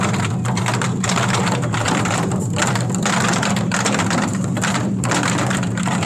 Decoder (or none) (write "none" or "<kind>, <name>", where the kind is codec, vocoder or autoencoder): none